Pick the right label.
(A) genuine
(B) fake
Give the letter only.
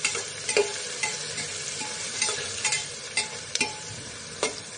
B